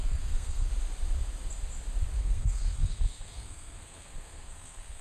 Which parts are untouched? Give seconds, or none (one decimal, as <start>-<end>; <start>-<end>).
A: 0.7-2.2